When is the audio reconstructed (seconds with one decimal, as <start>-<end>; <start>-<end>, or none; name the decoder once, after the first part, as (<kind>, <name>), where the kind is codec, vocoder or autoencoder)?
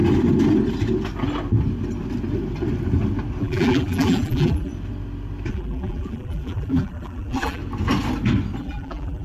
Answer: 3.4-4.7 (vocoder, BigVGAN v2); 5.5-7.6; 8.6-9.2